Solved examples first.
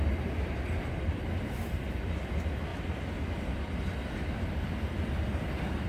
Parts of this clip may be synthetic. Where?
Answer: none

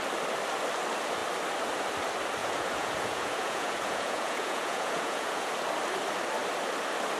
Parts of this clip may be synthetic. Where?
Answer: 2.4-5.5 (vocoder, Vocos)

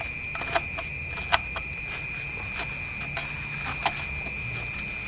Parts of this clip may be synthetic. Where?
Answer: none

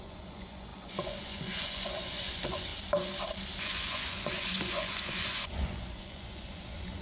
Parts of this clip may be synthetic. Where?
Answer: 0.0-2.7 (vocoder, Vocos); 3.6-7.0

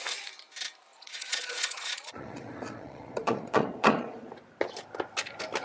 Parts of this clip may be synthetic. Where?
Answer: 0.9-4.3 (vocoder, Vocos)

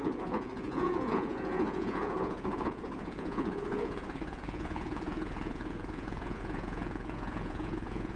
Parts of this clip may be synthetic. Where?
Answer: 0.0-8.2 (vocoder, Vocos)

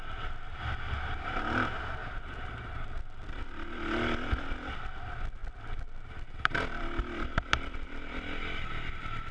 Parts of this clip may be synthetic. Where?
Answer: none